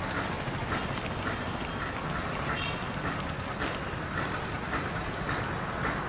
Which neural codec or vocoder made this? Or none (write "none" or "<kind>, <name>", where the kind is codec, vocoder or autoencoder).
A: none